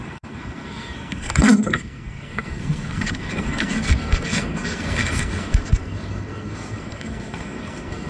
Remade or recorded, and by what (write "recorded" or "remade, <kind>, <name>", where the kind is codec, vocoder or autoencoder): remade, codec, SNAC